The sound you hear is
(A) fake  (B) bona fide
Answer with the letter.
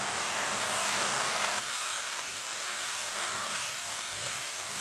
A